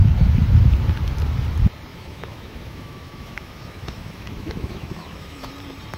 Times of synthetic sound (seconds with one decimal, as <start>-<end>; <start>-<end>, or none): 1.9-5.5